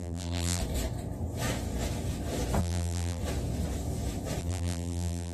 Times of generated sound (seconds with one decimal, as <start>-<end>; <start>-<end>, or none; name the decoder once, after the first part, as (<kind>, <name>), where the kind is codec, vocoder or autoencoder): 0.0-0.6 (vocoder, BigVGAN v2); 2.6-3.2; 4.4-5.3